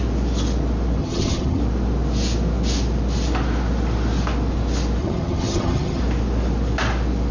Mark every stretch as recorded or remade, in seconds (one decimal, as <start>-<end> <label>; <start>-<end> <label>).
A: 0.0-1.0 recorded; 1.0-1.6 remade; 1.6-5.0 recorded; 5.0-6.0 remade; 6.0-7.3 recorded